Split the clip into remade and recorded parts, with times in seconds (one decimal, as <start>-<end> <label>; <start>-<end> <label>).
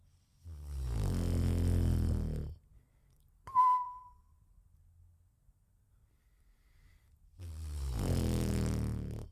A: 0.0-3.0 recorded; 3.0-4.2 remade; 4.2-9.3 recorded